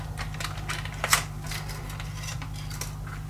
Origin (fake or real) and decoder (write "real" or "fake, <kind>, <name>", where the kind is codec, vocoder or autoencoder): real